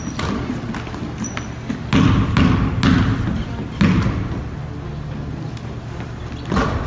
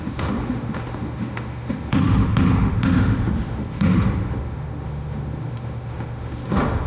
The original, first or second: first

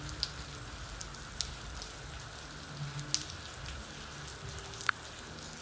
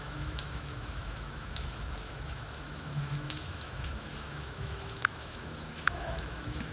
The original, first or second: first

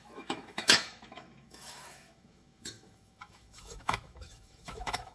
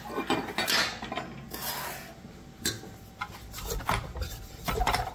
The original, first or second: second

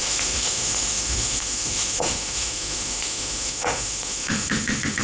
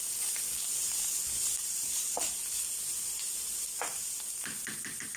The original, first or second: second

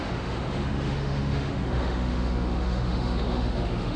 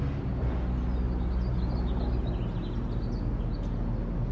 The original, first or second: second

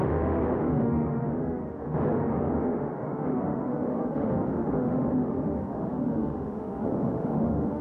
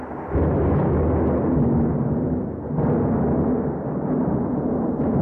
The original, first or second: second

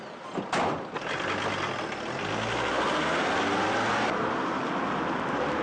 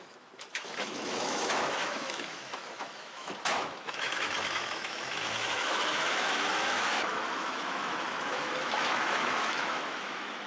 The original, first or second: first